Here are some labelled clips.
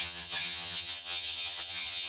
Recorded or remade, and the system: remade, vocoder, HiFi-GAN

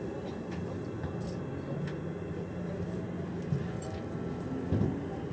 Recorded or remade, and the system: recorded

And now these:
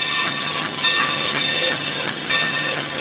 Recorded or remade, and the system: remade, vocoder, HiFi-GAN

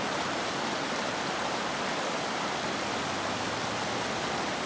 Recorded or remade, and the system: recorded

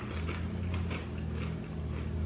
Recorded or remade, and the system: recorded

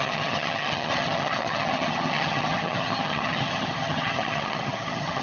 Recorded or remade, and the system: remade, vocoder, HiFi-GAN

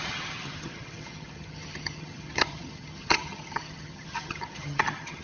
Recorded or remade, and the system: remade, vocoder, HiFi-GAN